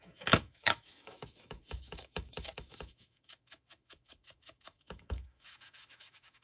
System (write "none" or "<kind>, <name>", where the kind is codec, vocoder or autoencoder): autoencoder, DAC-VAE